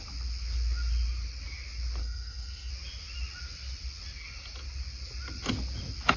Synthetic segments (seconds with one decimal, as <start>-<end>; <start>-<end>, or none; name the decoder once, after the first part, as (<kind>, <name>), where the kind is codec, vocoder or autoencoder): 2.0-2.7 (codec, SNAC)